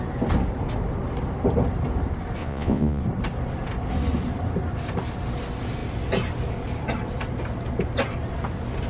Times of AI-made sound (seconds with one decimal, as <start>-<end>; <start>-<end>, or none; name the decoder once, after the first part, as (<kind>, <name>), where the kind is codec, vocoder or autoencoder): 2.4-3.0 (vocoder, Vocos)